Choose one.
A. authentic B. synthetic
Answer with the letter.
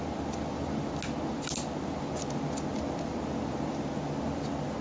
A